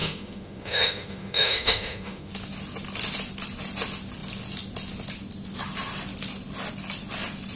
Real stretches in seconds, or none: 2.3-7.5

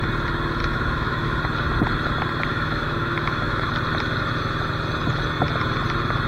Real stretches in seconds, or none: 0.0-0.6; 1.4-2.5; 3.7-6.3

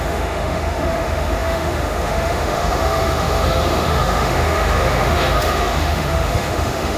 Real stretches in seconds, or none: none

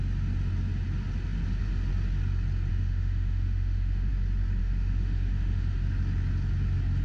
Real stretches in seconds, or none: 0.0-2.7; 4.1-4.6; 5.9-7.0

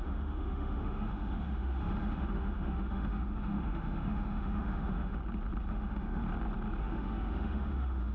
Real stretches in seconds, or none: 5.2-5.7; 6.2-6.8